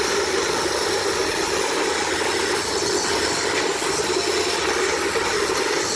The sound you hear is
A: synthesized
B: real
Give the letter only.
B